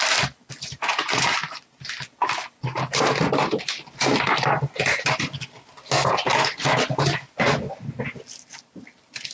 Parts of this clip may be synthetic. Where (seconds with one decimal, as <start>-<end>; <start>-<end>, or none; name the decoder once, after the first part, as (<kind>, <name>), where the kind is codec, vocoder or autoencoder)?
none